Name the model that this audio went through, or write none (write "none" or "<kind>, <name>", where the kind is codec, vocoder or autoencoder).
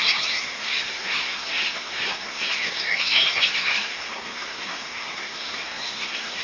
codec, SNAC